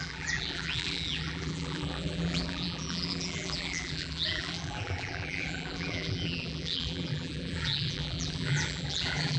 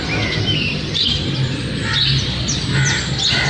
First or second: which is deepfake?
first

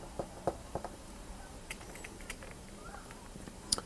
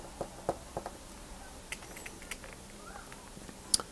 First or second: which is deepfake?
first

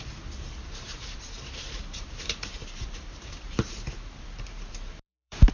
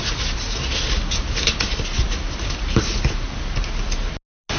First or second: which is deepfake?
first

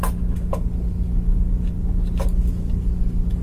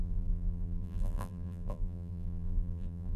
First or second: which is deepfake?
second